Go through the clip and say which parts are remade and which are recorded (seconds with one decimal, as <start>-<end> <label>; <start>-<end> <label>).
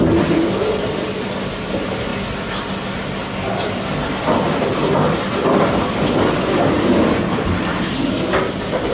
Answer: 0.0-8.9 recorded